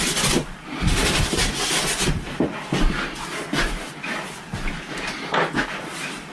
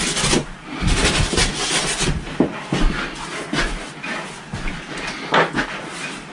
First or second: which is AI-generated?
first